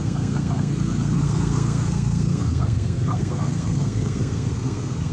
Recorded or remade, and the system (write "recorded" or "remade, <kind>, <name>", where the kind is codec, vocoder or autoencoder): remade, codec, SNAC